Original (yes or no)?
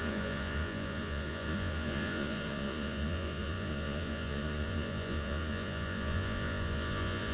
no